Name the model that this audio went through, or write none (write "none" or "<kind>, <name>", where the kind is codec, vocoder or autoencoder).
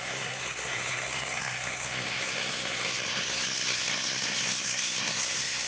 codec, SNAC